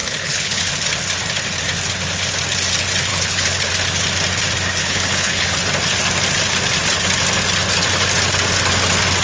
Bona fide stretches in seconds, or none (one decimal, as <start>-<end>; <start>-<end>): 0.7-3.1; 3.7-4.8; 5.6-9.2